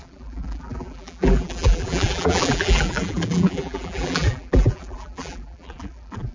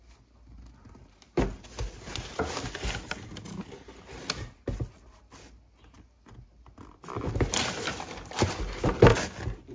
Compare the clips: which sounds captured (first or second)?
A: second